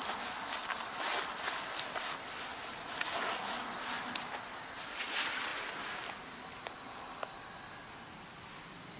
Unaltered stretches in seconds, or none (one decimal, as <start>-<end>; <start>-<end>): 0.0-9.0